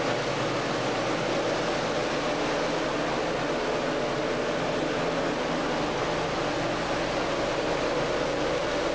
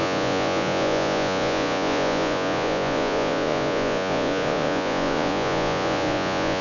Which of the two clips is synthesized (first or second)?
second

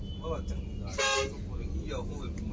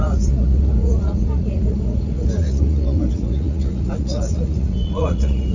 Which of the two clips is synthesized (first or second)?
second